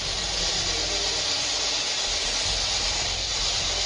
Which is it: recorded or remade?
recorded